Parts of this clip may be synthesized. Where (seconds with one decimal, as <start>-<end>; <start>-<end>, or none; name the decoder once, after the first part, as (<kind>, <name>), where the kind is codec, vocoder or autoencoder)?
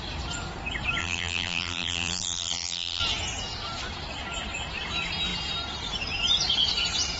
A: 1.0-3.0 (vocoder, BigVGAN v2)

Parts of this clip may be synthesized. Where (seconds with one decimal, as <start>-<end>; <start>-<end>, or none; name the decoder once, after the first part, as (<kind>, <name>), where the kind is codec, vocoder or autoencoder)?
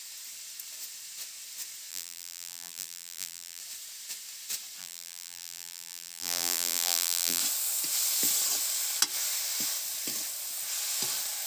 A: 1.9-3.6 (vocoder, BigVGAN v2); 4.8-7.4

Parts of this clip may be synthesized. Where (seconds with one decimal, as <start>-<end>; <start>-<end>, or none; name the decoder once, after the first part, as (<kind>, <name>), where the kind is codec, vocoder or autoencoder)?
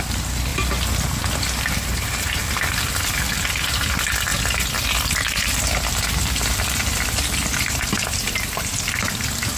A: 0.0-4.3 (vocoder, BigVGAN v2); 6.1-9.6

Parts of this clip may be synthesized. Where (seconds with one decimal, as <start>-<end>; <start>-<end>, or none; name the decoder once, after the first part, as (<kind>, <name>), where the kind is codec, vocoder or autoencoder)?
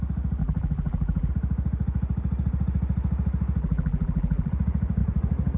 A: 0.4-1.3 (vocoder, BigVGAN v2); 3.6-4.5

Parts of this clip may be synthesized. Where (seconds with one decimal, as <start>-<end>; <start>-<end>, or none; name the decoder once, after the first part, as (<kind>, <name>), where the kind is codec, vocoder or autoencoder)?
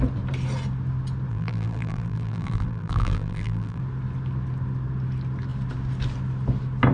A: 1.3-3.8 (vocoder, BigVGAN v2)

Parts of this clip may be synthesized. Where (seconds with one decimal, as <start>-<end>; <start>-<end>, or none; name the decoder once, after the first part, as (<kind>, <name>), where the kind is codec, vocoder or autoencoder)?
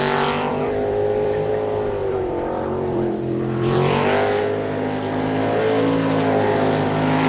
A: 0.5-1.5 (vocoder, BigVGAN v2); 2.0-4.4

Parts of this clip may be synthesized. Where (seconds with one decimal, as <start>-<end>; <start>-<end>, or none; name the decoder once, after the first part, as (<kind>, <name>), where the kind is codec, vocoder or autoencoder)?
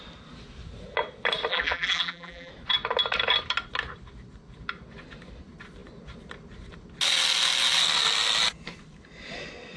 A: 1.5-2.5 (vocoder, BigVGAN v2)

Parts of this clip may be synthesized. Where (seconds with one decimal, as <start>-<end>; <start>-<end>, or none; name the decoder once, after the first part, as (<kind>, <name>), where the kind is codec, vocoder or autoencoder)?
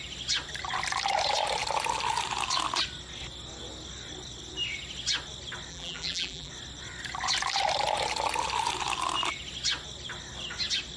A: 5.7-6.5 (vocoder, BigVGAN v2)